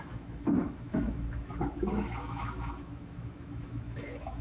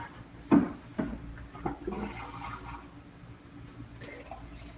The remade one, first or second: first